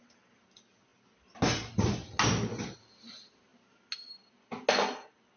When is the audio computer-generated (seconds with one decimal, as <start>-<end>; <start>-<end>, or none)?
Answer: none